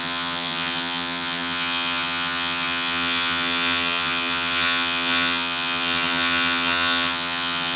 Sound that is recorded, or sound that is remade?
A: remade